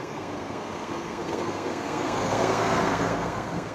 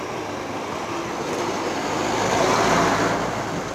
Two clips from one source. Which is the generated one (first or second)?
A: first